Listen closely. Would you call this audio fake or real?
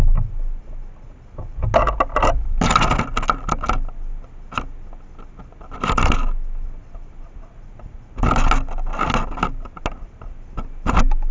real